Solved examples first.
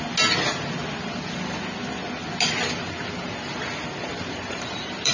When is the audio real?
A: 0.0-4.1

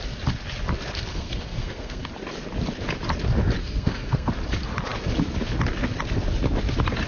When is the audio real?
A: 0.0-1.1; 2.1-3.6; 4.3-7.1

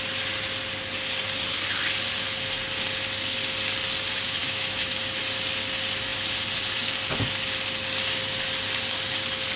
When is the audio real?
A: 0.0-4.4; 5.2-9.6